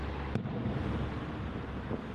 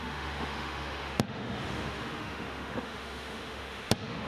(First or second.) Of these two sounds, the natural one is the first